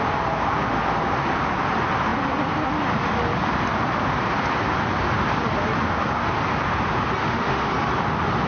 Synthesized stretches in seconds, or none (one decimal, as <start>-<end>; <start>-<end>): 7.2-7.7